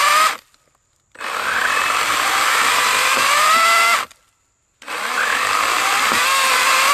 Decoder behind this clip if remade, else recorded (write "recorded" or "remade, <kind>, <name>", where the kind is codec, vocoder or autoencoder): recorded